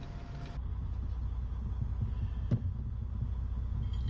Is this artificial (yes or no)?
no